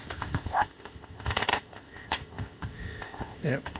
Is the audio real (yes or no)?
no